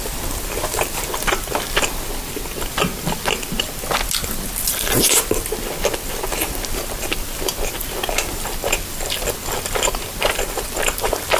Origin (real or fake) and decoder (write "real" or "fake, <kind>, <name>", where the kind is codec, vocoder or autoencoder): real